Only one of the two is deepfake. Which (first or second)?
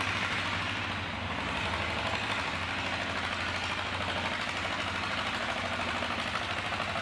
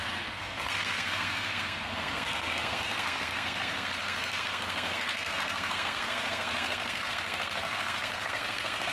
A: second